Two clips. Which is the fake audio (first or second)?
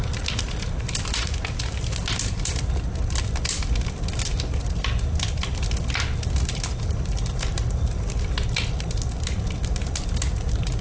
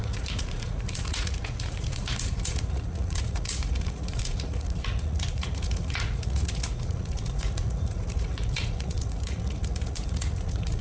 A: second